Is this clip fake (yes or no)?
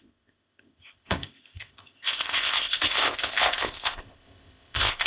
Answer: yes